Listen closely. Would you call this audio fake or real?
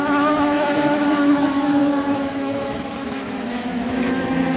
fake